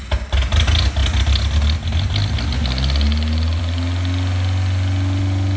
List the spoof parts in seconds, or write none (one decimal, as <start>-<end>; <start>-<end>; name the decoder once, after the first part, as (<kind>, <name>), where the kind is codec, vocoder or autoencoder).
none